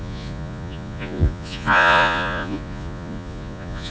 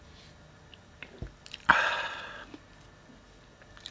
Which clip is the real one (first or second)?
second